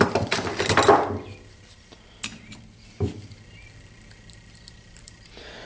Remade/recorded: recorded